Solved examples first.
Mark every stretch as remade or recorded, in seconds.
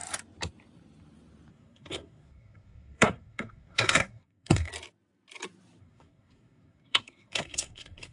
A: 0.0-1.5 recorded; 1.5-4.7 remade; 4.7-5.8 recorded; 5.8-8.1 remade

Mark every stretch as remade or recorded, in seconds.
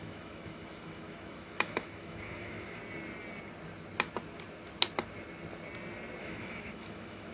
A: 0.0-2.8 remade; 2.8-6.2 recorded; 6.2-7.3 remade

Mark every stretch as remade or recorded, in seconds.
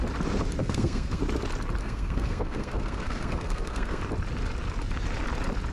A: 0.0-0.6 recorded; 0.6-1.2 remade; 1.2-1.8 recorded; 1.8-4.0 remade; 4.0-5.7 recorded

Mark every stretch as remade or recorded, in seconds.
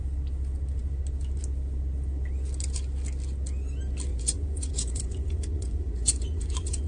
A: 0.0-4.1 recorded; 4.1-6.9 remade